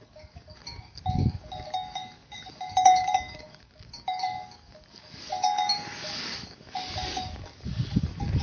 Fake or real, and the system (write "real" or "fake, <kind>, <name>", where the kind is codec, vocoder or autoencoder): fake, codec, DAC